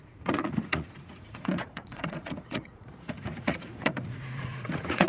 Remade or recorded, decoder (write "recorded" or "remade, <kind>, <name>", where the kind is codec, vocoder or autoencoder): remade, vocoder, Vocos